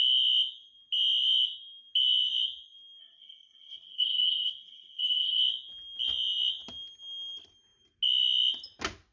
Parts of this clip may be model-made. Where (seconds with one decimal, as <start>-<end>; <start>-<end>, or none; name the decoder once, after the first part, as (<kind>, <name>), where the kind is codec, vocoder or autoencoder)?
3.0-5.4 (codec, SNAC)